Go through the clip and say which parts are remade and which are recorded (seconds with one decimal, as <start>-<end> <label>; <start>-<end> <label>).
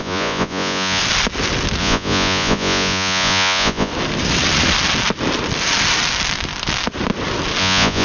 0.0-1.0 remade; 1.0-1.8 recorded; 1.8-3.9 remade; 3.9-7.6 recorded; 7.6-8.0 remade